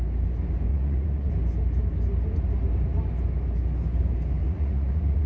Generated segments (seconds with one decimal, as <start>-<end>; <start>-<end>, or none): 0.7-1.3; 4.4-5.3